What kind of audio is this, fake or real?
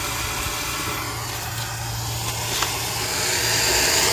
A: real